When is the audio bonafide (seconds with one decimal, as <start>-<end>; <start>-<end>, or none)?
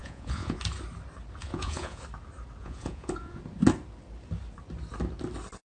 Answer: 0.6-1.4; 2.0-2.6; 3.4-5.7